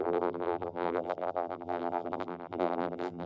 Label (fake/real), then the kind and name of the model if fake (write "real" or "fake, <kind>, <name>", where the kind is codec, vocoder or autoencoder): fake, vocoder, BigVGAN v2